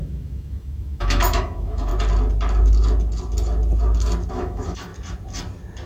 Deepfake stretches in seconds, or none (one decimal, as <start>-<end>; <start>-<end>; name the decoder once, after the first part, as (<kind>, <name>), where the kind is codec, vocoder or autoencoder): 0.0-1.9 (autoencoder, DAC-VAE); 4.3-4.9